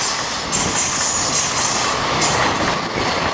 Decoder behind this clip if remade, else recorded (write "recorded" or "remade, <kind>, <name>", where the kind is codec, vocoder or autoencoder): recorded